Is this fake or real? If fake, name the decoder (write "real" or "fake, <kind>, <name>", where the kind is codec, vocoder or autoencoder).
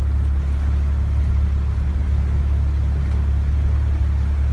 real